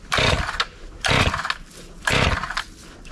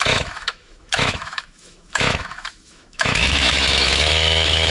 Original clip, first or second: first